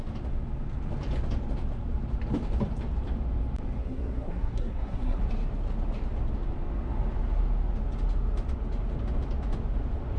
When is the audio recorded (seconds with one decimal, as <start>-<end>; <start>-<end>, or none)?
0.0-3.8; 5.2-10.2